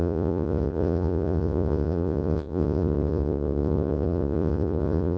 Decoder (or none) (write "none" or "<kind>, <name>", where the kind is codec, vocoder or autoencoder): vocoder, Vocos